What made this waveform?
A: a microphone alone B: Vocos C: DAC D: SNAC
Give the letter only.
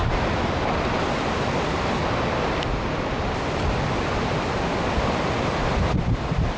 A